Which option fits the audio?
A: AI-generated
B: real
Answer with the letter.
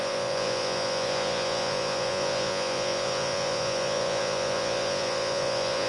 A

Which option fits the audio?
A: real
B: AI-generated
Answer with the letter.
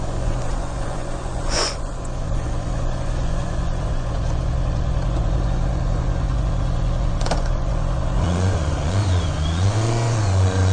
B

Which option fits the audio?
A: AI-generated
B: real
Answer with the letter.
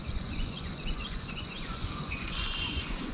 A